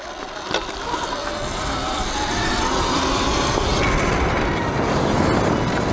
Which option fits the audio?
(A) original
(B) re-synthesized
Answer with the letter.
A